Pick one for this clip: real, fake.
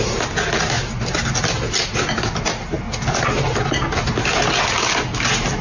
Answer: real